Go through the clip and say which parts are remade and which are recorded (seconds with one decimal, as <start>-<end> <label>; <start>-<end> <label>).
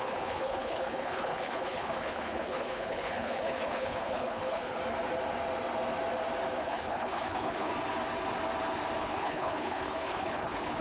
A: 0.0-4.8 remade; 4.8-6.6 recorded; 6.6-7.7 remade; 7.7-9.0 recorded; 9.0-10.8 remade